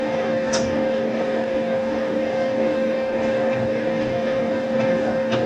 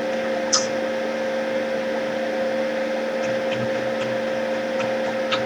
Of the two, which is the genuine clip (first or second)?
second